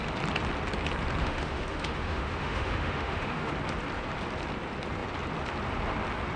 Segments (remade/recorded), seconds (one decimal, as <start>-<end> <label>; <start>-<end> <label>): 0.0-1.2 recorded; 1.2-3.5 remade; 3.5-6.4 recorded